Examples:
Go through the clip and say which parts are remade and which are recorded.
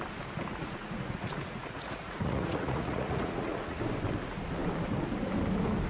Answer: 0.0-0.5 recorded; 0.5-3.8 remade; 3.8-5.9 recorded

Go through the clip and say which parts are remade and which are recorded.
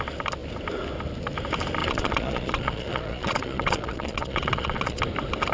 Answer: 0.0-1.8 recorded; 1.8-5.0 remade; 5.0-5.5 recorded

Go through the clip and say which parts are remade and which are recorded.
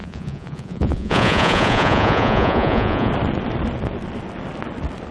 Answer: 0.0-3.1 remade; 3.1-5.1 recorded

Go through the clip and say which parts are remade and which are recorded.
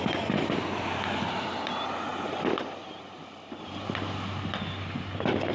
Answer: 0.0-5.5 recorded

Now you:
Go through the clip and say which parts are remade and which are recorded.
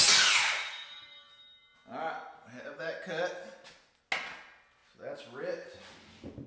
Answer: 0.0-6.5 recorded